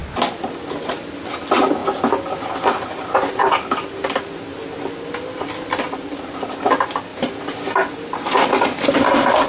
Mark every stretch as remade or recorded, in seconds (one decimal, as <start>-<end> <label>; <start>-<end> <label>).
0.0-9.5 recorded